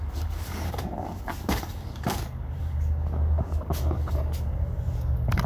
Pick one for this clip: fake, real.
fake